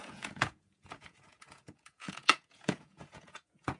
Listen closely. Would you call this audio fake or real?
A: fake